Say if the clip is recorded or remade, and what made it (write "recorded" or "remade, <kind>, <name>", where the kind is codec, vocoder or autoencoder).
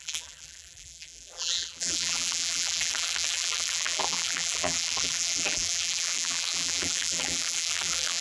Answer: remade, vocoder, BigVGAN v2